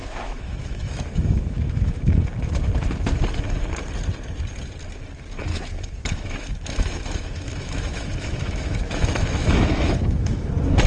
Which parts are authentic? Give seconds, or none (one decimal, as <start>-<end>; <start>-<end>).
2.1-5.5; 10.5-10.9